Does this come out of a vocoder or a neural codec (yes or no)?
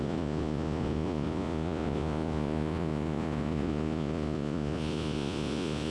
yes